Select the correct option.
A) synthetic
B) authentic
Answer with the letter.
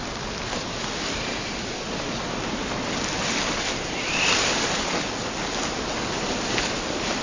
B